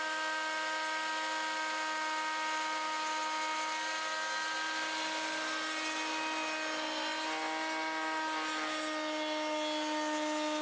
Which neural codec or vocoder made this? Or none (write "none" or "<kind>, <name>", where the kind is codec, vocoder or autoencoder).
none